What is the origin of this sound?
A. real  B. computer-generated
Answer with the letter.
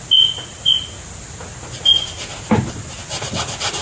A